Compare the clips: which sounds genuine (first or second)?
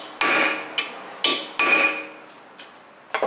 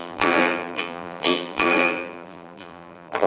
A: first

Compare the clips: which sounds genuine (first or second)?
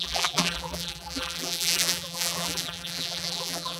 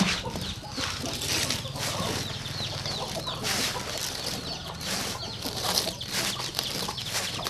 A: second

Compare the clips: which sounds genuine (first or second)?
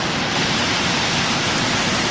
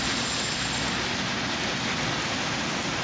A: second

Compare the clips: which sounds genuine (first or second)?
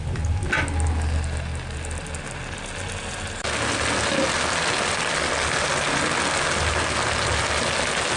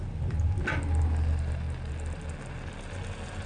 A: first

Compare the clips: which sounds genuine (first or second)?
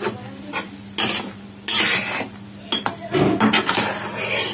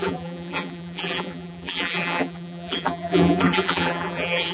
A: first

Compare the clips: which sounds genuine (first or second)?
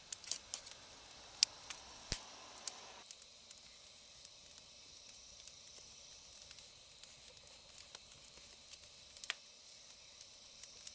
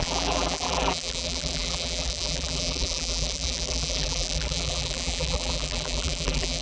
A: first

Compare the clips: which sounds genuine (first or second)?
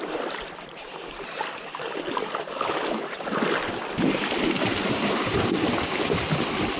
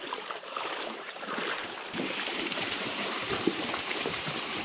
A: first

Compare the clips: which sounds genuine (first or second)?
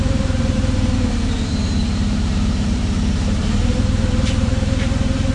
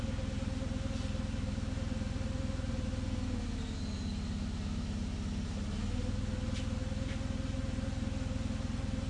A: second